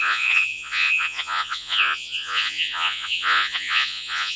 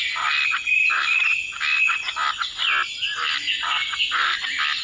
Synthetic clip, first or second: first